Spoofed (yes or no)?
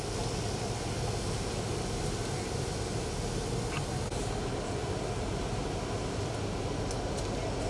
no